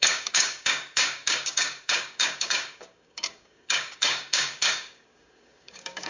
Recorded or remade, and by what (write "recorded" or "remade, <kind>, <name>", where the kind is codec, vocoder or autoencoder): remade, codec, DAC